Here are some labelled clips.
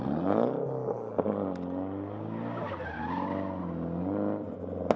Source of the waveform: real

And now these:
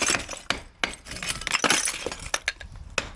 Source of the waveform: real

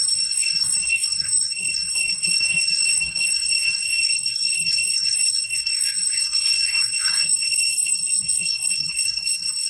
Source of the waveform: fake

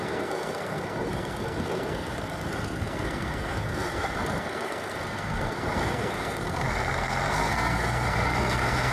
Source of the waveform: fake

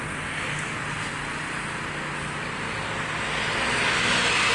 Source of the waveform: real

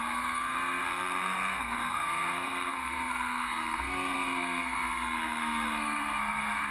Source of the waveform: fake